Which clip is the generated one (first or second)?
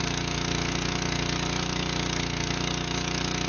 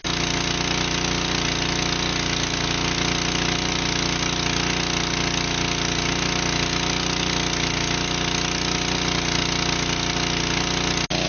first